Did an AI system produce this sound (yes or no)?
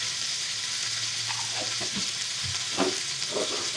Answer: no